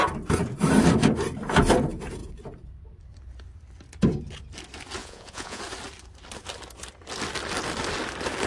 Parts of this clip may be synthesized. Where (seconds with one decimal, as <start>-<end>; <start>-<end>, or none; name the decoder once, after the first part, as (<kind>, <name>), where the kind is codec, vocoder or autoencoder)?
5.0-5.6 (vocoder, Vocos)